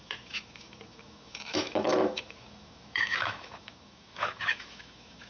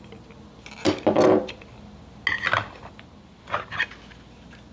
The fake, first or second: first